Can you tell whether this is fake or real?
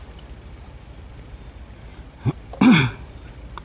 real